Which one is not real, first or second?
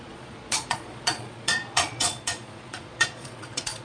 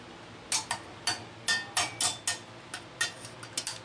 first